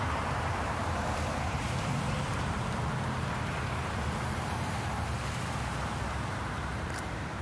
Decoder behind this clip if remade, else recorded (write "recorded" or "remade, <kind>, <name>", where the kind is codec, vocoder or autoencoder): remade, vocoder, BigVGAN v2